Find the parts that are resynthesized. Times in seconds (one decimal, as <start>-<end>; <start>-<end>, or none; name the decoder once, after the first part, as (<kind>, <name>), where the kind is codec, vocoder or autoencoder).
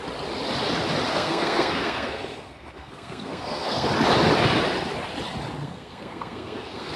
1.1-3.9 (codec, SNAC); 5.6-7.0